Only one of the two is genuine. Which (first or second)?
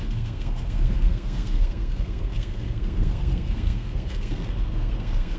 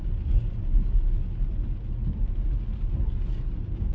second